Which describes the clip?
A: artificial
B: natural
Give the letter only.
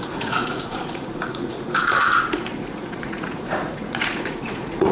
A